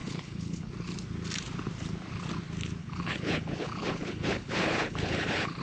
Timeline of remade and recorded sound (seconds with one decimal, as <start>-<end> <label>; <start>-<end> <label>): 0.0-0.7 remade; 0.7-2.8 recorded; 2.8-5.6 remade